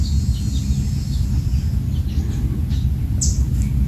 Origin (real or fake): real